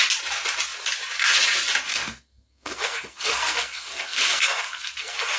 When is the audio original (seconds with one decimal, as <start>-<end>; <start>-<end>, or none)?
0.0-1.9